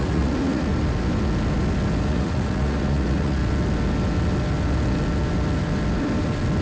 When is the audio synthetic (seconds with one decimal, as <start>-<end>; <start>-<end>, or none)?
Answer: 0.0-0.7; 2.1-3.4